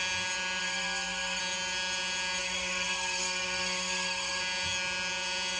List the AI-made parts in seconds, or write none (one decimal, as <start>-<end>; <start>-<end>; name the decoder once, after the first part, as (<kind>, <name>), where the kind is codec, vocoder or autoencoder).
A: 0.6-1.4 (codec, SNAC); 2.4-4.4